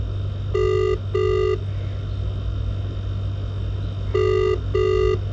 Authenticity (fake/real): real